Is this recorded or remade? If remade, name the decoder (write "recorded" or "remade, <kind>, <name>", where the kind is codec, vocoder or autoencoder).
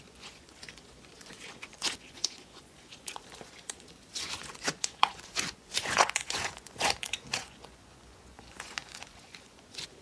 remade, vocoder, Vocos